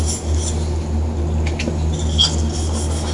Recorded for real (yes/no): yes